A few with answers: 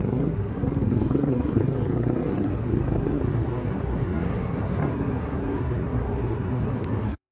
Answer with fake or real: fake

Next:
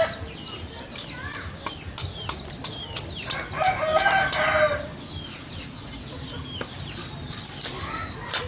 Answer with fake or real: real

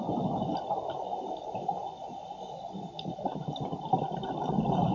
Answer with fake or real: real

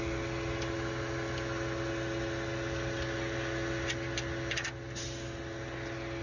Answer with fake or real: real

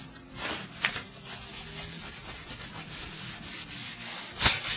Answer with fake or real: real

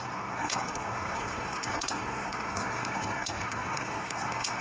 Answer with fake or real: fake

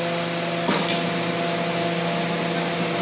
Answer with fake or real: real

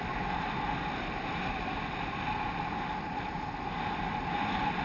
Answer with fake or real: real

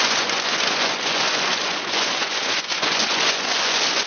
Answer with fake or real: fake